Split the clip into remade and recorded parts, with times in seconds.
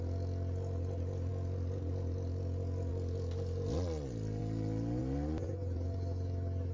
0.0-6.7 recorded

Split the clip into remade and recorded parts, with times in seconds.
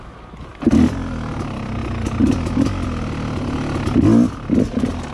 0.0-5.1 recorded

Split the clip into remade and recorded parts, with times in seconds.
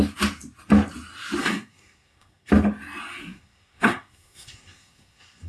0.0-1.4 recorded; 1.4-2.5 remade; 2.5-3.2 recorded; 3.2-5.5 remade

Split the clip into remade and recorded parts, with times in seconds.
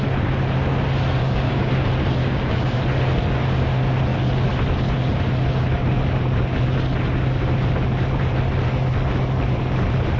0.0-1.2 recorded; 1.2-1.7 remade; 1.7-2.2 recorded; 2.2-2.8 remade; 2.8-10.2 recorded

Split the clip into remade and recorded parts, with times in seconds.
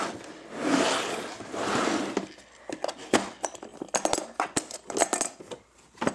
0.0-6.1 recorded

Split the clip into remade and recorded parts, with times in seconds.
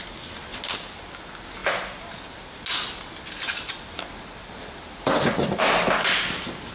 0.0-6.7 recorded